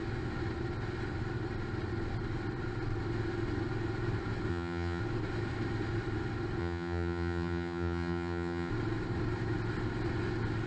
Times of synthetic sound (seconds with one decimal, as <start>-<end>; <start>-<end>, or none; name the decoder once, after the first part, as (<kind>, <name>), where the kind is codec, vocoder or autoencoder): 4.5-5.0 (vocoder, HiFi-GAN); 6.6-8.7